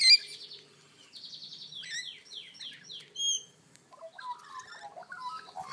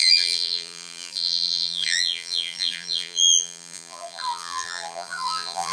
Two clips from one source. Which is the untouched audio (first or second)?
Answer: first